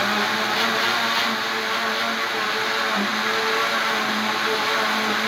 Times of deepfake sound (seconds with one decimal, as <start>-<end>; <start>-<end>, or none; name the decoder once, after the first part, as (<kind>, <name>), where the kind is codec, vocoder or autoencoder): none